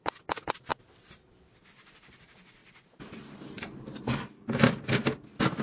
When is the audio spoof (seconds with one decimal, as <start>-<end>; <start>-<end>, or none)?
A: none